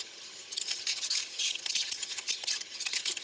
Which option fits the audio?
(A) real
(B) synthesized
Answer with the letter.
B